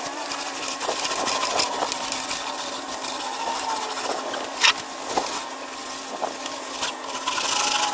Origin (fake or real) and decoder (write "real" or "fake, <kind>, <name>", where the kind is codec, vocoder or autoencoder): real